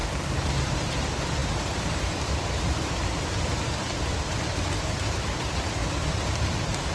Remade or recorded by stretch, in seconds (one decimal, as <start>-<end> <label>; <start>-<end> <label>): 0.0-6.9 remade

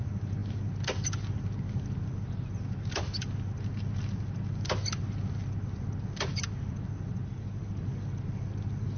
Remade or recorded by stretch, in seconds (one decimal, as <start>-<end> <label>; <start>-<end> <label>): 0.0-9.0 recorded